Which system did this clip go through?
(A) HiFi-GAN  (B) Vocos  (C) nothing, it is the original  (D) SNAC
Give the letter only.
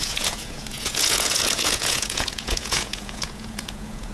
B